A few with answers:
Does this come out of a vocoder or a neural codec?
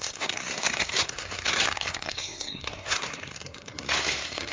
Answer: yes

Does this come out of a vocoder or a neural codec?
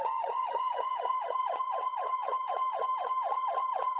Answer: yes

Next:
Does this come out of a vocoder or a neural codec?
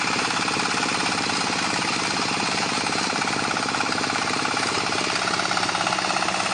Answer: no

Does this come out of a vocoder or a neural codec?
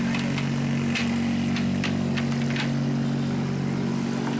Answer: no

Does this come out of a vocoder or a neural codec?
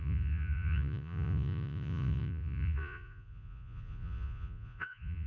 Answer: yes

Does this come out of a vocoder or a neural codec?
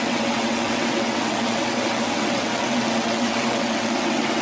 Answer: yes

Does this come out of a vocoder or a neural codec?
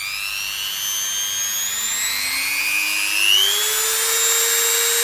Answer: no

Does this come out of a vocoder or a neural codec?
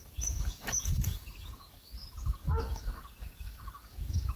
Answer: yes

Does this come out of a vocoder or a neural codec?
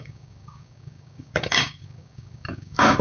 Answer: yes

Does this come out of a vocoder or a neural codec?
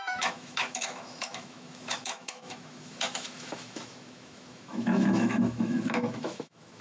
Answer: yes